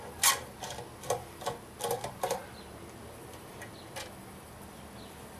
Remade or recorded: recorded